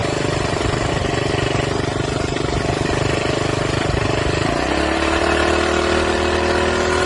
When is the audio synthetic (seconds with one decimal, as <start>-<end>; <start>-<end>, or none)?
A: none

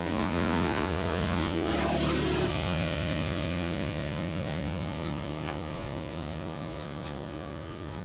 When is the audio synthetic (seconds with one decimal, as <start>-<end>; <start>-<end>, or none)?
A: 0.0-1.7; 2.5-8.0

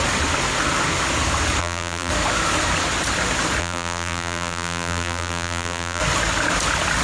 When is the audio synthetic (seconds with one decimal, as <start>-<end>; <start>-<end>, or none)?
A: 1.6-2.1; 3.6-6.0

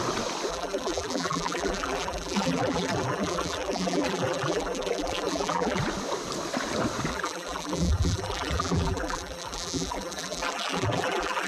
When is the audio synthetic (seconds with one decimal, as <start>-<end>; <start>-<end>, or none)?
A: 0.5-5.8; 7.1-11.5